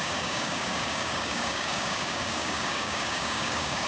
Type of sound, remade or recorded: remade